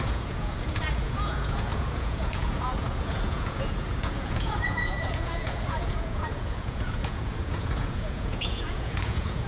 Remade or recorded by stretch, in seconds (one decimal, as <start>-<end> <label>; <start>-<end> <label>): 0.0-9.5 remade